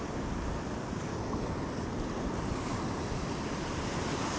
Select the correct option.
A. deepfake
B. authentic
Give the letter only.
B